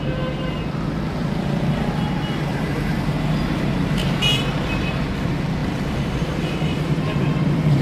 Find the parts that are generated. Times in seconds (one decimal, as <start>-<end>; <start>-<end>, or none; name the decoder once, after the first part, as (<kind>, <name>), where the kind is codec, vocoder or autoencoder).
5.6-7.8 (vocoder, BigVGAN v2)